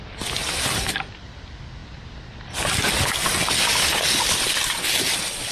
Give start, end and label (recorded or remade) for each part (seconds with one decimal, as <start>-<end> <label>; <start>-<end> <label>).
0.0-5.5 recorded